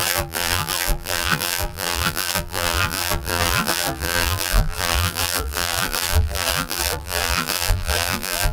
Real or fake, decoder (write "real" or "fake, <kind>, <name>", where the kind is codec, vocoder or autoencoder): fake, vocoder, BigVGAN v2